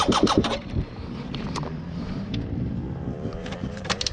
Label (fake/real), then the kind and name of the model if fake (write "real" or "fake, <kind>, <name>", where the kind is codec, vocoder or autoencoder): fake, vocoder, BigVGAN v2